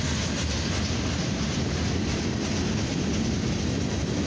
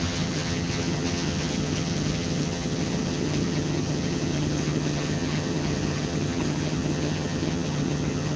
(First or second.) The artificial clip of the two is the second